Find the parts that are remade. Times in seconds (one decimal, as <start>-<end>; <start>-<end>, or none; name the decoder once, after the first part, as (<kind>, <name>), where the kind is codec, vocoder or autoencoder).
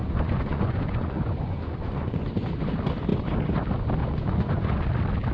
0.0-2.3 (vocoder, Vocos); 4.0-4.8